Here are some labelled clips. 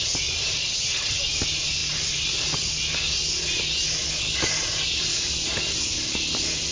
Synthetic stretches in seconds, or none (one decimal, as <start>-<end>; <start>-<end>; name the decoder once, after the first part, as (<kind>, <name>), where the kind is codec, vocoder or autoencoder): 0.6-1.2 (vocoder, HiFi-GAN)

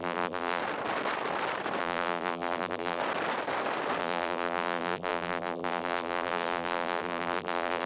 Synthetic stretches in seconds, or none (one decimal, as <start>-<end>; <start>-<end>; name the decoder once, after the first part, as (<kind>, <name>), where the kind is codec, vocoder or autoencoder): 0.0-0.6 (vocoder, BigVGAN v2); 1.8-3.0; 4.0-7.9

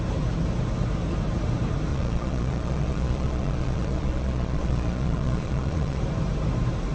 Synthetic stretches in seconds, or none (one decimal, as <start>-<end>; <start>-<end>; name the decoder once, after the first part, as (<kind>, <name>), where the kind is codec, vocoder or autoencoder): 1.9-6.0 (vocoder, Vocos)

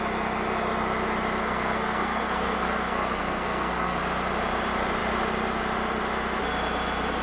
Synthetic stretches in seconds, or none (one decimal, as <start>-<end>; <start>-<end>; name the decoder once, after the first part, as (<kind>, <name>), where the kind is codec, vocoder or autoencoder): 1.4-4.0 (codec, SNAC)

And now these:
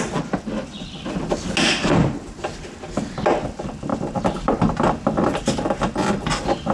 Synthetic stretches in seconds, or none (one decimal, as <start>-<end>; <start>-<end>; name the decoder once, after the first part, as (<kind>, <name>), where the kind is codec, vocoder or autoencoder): none

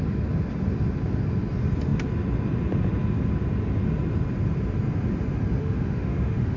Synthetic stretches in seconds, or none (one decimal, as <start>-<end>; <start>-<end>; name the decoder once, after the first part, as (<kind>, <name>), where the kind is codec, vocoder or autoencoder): 5.6-6.6 (autoencoder, DAC-VAE)

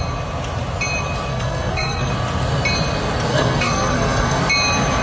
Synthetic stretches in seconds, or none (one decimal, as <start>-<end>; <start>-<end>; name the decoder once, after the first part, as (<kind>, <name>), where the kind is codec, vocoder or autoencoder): 1.3-2.1 (codec, SNAC); 3.3-4.4

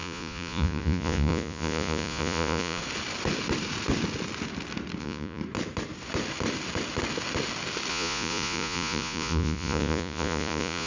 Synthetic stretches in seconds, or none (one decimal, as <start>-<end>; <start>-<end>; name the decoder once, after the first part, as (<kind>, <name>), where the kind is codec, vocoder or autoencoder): 0.0-2.8 (vocoder, Vocos); 5.0-5.4; 7.9-10.9